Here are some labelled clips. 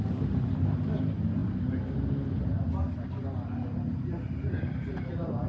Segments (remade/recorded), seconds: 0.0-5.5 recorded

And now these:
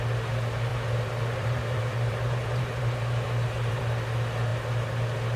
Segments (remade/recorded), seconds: 0.0-0.7 recorded; 0.7-3.8 remade; 3.8-5.4 recorded

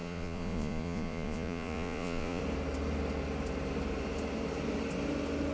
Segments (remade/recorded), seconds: 0.0-2.4 remade; 2.4-5.5 recorded

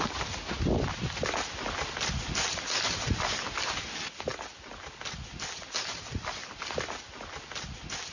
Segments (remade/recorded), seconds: 0.0-8.1 recorded

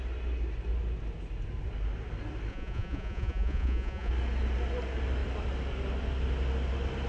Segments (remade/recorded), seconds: 0.0-2.5 recorded; 2.5-4.1 remade; 4.1-7.1 recorded

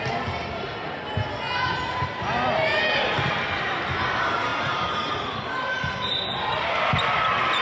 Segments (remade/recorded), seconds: 0.0-7.6 recorded

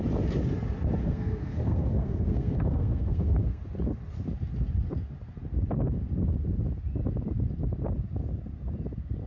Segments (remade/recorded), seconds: 0.0-1.0 recorded; 1.0-3.6 remade; 3.6-9.3 recorded

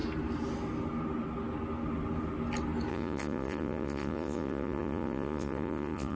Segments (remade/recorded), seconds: 0.0-2.9 recorded; 2.9-6.2 remade